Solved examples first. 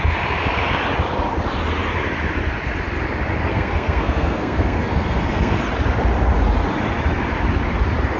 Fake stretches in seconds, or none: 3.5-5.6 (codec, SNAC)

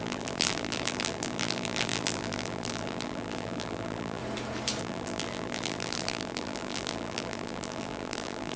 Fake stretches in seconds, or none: 0.0-4.2 (vocoder, BigVGAN v2); 4.8-8.6

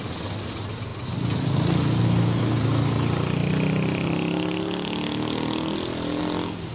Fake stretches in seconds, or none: none

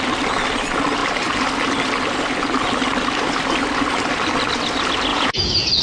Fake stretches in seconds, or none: 5.1-5.8 (vocoder, Vocos)

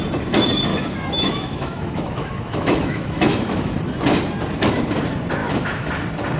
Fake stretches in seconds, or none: 0.7-3.7 (autoencoder, DAC-VAE); 5.4-5.9

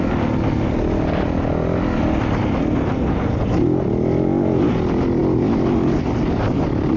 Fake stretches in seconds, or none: none